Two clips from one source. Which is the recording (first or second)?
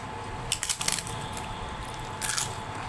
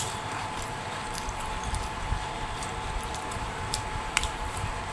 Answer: first